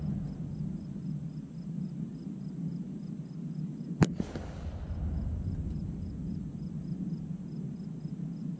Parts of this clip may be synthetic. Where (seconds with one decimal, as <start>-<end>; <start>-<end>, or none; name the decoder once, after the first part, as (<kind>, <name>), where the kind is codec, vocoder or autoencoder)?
none